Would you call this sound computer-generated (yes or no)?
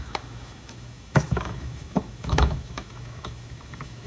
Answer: yes